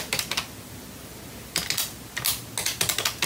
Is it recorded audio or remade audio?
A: recorded